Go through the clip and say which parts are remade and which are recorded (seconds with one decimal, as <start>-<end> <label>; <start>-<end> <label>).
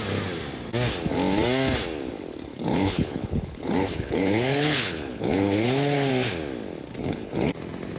0.0-2.5 recorded; 2.5-6.1 remade; 6.1-7.0 recorded; 7.0-7.5 remade; 7.5-8.0 recorded